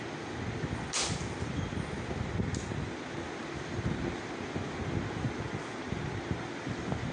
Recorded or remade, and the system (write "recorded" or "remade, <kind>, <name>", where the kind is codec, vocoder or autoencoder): recorded